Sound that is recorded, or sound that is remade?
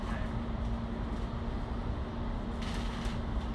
recorded